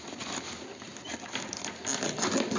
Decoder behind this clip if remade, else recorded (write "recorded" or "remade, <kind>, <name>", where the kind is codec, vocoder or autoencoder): recorded